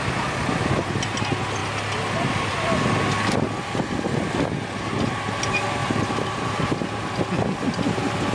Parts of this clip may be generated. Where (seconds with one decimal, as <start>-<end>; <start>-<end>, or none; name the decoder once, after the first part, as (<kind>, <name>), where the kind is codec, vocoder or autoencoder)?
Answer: 5.8-6.7 (vocoder, BigVGAN v2)